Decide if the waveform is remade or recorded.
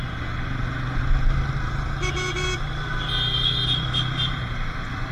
recorded